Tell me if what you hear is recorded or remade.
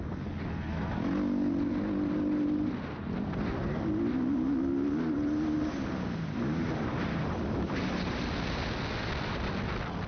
recorded